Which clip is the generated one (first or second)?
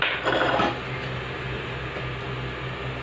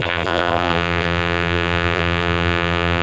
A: second